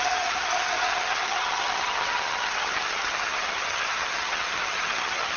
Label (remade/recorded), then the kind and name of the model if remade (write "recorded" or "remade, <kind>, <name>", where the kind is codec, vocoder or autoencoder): remade, vocoder, HiFi-GAN